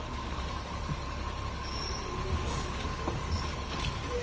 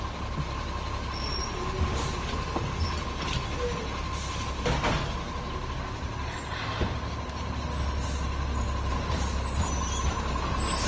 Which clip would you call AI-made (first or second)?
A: first